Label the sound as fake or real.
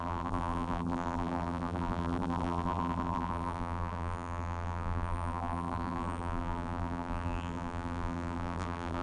fake